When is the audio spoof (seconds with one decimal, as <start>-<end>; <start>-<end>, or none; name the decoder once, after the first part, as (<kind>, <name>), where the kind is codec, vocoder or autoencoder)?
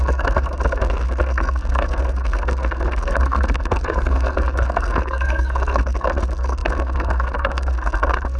0.0-8.4 (codec, SNAC)